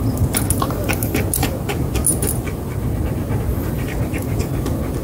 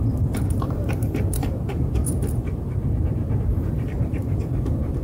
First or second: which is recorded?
first